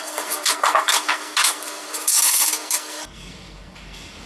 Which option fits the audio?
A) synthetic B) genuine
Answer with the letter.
A